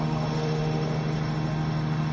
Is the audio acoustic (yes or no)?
no